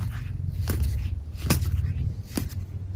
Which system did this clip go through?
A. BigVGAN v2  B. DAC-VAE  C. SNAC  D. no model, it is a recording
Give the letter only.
D